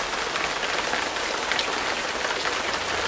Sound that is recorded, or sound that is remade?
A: recorded